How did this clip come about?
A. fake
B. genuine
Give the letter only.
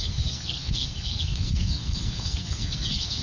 A